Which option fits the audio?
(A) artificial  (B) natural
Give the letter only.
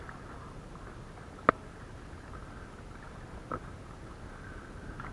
B